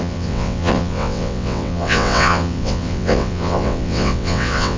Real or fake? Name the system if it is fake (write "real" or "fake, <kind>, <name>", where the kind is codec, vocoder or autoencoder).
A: fake, vocoder, WaveNeXt